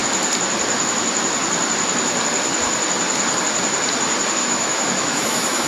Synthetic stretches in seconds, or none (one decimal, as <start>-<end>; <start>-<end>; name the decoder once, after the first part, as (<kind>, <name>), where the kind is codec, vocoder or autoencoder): 4.4-5.7 (autoencoder, DAC-VAE)